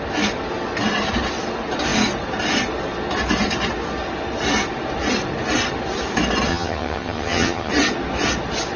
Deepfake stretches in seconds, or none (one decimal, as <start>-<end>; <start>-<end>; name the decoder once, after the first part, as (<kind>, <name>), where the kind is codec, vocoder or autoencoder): 6.5-7.7 (vocoder, HiFi-GAN)